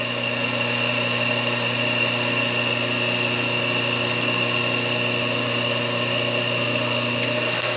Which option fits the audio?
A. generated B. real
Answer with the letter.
B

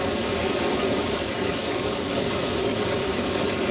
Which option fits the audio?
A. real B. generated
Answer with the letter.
B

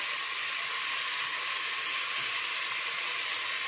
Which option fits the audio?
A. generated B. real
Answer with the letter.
B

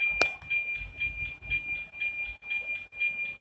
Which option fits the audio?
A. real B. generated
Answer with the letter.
A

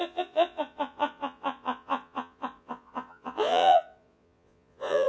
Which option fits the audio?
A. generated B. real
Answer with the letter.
A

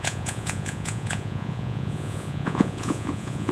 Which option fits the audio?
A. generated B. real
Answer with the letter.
A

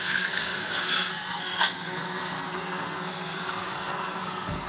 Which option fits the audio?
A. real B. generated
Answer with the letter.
B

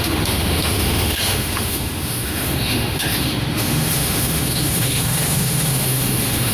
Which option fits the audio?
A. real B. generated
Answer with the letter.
B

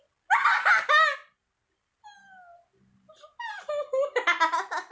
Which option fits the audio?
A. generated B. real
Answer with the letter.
B